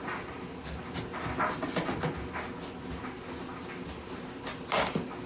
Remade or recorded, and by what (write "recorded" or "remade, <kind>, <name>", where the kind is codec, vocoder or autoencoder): recorded